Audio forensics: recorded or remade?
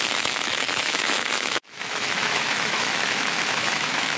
remade